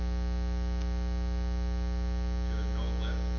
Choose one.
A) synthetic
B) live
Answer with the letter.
B